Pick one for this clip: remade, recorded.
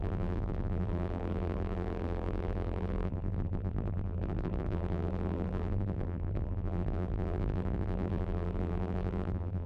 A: remade